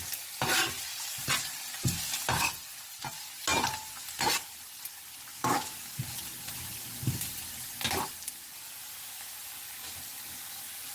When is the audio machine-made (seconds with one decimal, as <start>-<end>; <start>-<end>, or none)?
5.3-6.0